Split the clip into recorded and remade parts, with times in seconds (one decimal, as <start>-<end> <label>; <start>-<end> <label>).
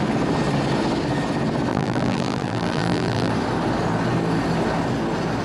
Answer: 0.0-1.7 recorded; 1.7-3.3 remade; 3.3-5.4 recorded